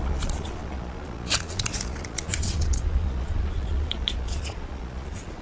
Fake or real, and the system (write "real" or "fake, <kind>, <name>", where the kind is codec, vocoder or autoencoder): fake, vocoder, Vocos